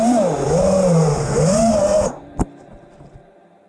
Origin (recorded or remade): recorded